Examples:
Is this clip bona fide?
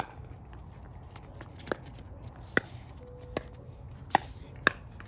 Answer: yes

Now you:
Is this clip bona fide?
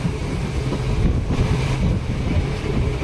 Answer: yes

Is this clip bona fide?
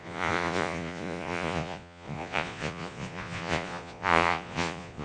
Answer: no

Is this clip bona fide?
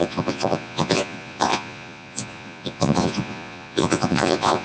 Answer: no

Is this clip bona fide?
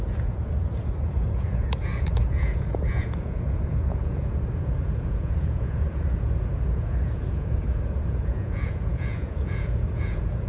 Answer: no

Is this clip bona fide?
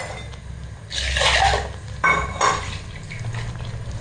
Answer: yes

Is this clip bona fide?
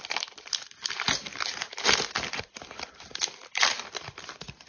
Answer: yes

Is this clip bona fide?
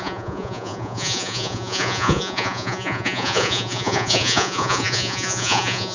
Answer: no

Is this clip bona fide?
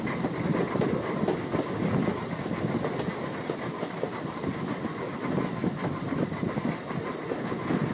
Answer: yes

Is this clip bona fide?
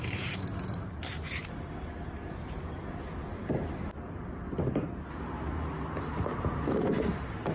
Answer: yes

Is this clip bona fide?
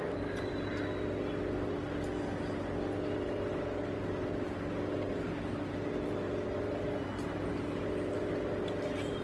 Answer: yes